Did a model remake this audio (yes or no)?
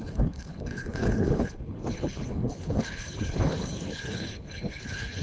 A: yes